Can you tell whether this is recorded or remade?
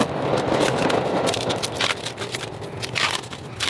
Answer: remade